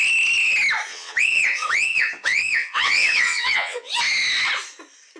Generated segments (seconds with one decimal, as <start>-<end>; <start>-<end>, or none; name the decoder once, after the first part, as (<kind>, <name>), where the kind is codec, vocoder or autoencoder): 0.9-4.0 (vocoder, WaveNeXt)

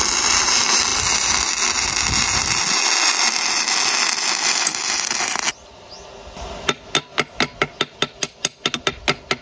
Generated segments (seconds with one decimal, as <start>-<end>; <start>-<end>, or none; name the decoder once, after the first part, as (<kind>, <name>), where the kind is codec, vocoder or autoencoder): none